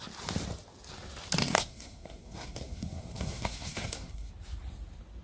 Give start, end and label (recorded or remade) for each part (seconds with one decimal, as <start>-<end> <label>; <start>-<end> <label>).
0.0-1.4 recorded; 1.4-4.3 remade; 4.3-5.2 recorded